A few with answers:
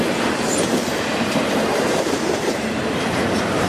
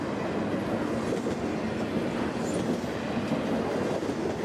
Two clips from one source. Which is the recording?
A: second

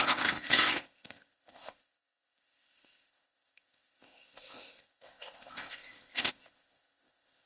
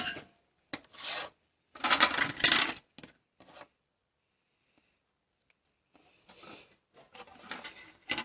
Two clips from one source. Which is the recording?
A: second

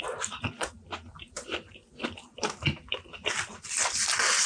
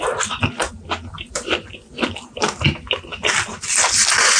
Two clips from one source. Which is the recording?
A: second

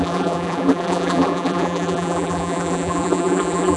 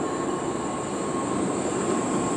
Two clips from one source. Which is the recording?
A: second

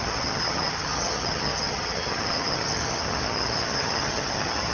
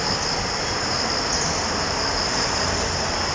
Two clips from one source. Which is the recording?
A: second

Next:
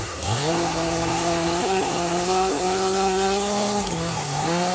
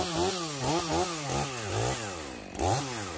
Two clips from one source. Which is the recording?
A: second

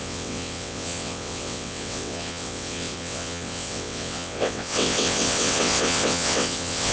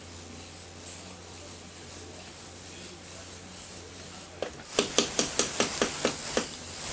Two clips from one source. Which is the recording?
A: second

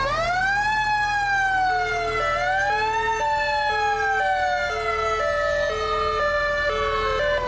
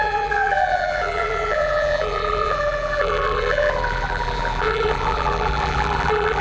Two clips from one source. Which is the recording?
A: first